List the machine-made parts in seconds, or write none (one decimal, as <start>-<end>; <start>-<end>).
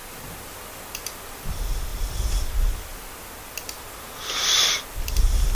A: none